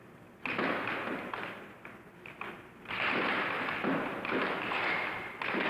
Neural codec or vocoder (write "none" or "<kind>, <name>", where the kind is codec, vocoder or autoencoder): none